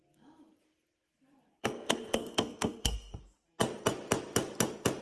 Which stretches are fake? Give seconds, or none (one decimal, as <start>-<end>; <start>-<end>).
1.5-3.2